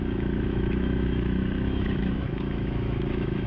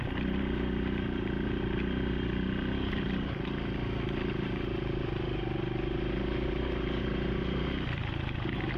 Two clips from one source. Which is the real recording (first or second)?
second